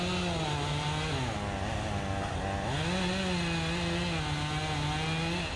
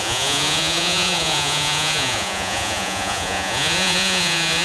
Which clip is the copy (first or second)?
second